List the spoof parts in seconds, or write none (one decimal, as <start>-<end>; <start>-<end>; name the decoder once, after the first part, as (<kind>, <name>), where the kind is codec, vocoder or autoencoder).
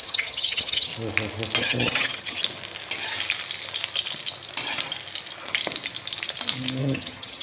0.0-0.9 (vocoder, HiFi-GAN); 1.6-2.4; 6.8-7.4